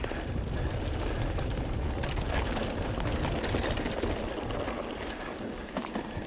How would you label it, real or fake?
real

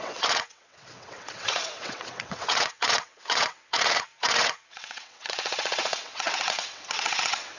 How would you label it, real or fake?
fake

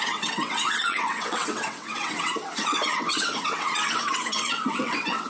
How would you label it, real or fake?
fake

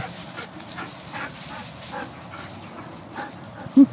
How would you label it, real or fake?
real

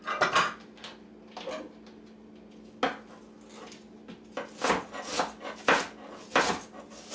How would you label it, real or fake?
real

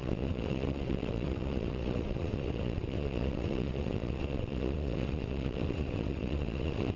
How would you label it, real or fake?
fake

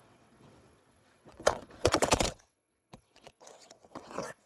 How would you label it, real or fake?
fake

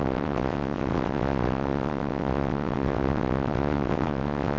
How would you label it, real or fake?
fake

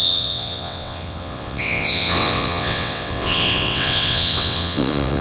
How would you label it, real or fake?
fake